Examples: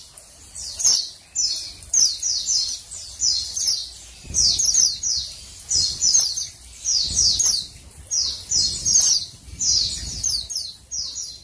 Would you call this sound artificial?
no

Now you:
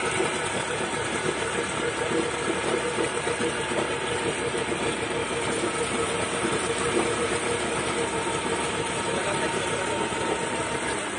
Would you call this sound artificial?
no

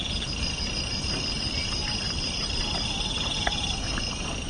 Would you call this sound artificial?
no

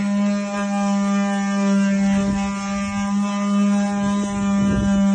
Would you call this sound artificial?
no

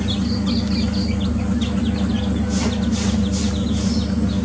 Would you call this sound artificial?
no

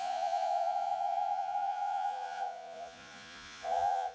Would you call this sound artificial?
yes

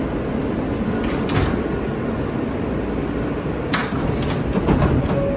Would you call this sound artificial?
no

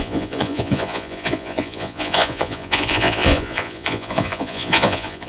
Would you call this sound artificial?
yes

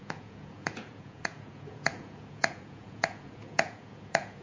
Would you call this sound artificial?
yes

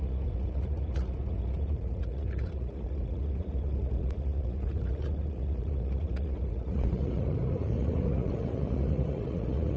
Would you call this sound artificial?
yes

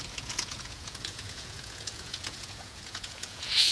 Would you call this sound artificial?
yes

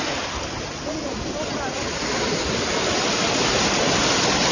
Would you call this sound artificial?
no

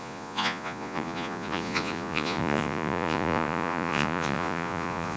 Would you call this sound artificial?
yes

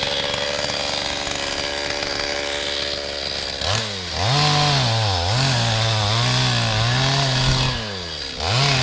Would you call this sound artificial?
no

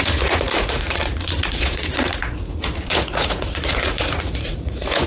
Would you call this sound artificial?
yes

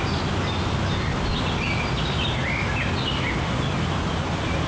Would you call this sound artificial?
no